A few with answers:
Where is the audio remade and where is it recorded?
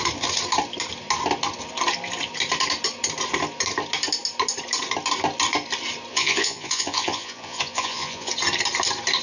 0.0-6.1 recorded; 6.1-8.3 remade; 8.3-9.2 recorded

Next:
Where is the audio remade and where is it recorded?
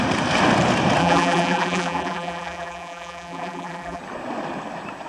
0.0-1.0 recorded; 1.0-4.0 remade; 4.0-5.1 recorded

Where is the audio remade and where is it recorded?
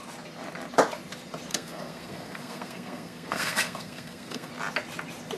0.0-1.5 recorded; 1.5-4.5 remade; 4.5-5.4 recorded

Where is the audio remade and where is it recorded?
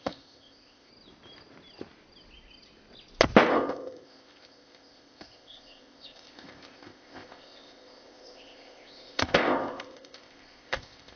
0.0-0.9 remade; 0.9-3.5 recorded; 3.5-11.2 remade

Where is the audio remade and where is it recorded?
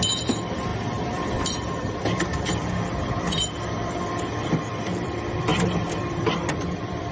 0.0-7.1 remade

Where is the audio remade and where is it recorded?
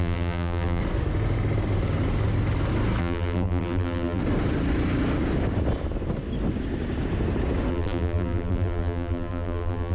0.0-0.8 remade; 0.8-3.0 recorded; 3.0-4.2 remade; 4.2-7.7 recorded; 7.7-9.9 remade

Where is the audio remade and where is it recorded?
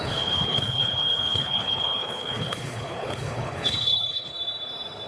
0.0-4.3 remade; 4.3-5.1 recorded